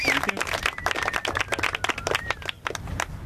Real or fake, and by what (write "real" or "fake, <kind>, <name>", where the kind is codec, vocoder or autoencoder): real